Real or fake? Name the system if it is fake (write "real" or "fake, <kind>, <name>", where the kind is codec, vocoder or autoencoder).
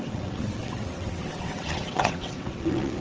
fake, vocoder, WaveNeXt